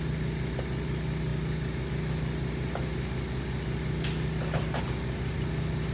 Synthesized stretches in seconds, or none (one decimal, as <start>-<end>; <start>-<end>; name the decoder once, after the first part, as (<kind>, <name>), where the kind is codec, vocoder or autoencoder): none